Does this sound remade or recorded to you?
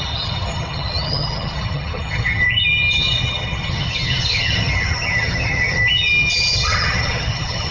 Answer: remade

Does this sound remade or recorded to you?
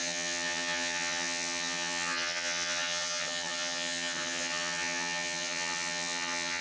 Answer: remade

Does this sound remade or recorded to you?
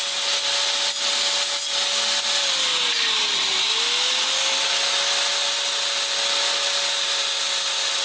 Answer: recorded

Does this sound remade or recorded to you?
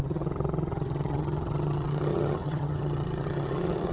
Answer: remade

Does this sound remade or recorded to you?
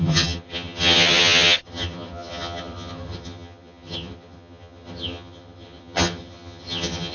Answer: remade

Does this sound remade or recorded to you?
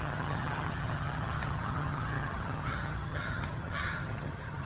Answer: remade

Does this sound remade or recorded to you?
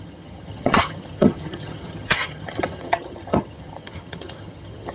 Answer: remade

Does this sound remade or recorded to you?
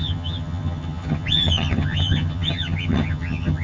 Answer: remade